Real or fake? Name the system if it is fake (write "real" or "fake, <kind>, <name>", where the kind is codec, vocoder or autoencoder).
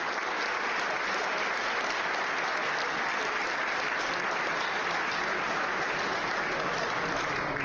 real